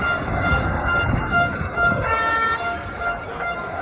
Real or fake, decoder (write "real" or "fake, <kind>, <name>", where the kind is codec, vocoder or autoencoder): fake, codec, DAC